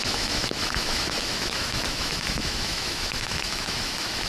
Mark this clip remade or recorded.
remade